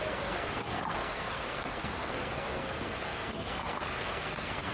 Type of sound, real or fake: fake